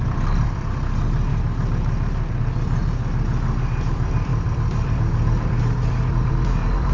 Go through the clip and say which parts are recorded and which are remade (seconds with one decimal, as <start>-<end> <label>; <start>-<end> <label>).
0.0-1.3 remade; 1.3-2.4 recorded; 2.4-2.8 remade; 2.8-3.9 recorded; 3.9-6.9 remade